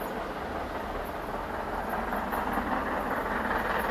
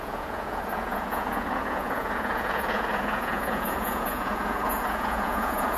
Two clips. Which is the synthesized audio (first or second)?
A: second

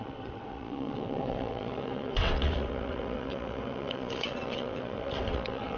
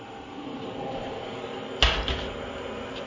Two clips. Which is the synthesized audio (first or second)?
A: first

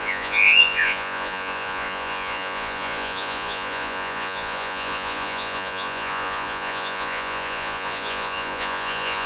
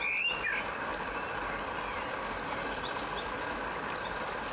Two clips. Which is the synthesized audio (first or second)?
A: first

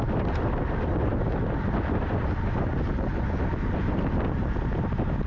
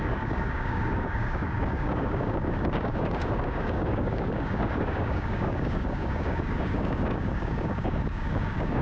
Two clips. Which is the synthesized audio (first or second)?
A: second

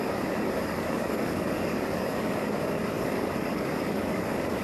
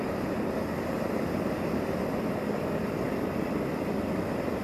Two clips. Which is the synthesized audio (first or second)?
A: first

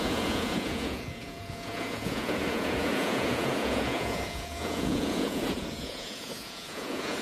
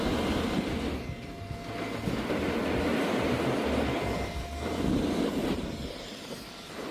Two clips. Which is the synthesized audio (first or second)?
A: first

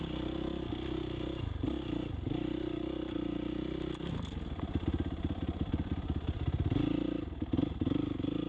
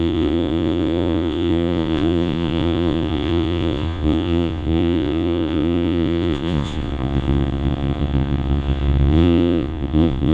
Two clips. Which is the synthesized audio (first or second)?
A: second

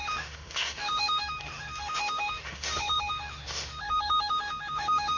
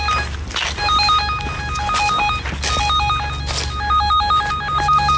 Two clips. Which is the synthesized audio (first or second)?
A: first